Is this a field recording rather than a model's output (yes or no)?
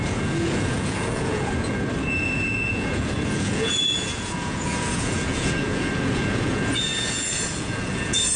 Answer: no